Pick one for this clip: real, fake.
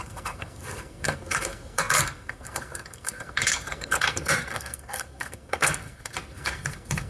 fake